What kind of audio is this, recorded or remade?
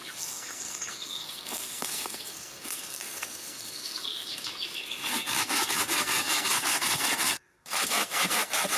remade